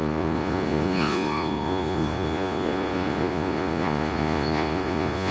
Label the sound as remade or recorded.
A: remade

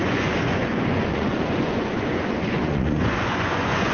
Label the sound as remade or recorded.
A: remade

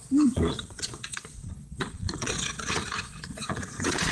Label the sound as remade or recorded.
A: remade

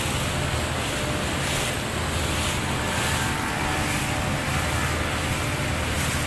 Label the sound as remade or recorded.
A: recorded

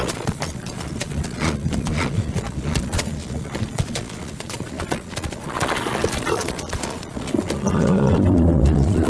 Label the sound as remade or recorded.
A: remade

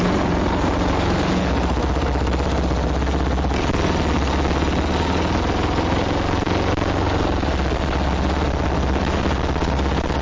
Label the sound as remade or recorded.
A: recorded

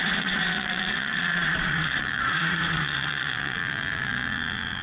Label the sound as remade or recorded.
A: remade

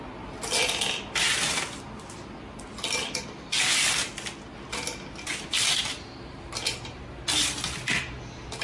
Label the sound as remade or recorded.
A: recorded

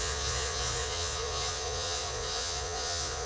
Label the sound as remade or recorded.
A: remade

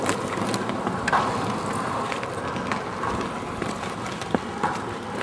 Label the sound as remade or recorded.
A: recorded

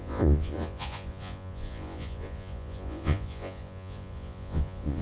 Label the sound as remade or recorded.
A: remade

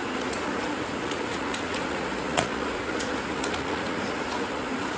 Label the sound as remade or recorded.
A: remade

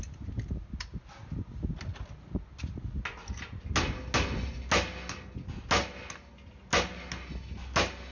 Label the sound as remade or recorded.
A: recorded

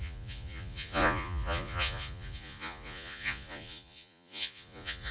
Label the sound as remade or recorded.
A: remade